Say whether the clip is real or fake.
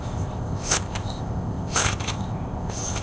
fake